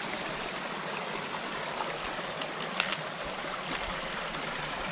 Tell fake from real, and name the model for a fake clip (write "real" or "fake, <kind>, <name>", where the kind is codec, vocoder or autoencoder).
real